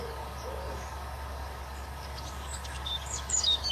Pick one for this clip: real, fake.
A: fake